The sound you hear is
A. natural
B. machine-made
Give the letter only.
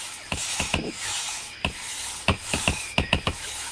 B